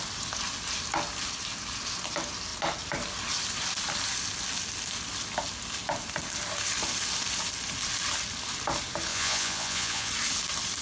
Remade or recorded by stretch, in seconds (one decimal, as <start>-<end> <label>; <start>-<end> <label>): 0.0-9.1 recorded; 9.1-10.1 remade; 10.1-10.8 recorded